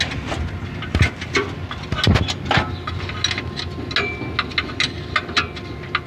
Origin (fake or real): real